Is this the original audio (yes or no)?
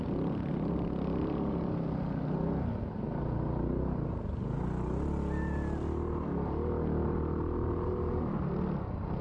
yes